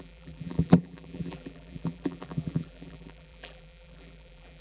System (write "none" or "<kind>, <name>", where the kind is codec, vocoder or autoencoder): vocoder, BigVGAN v2